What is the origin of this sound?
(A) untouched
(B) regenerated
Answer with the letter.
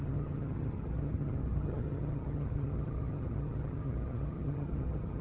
B